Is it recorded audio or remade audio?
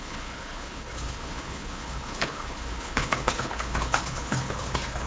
remade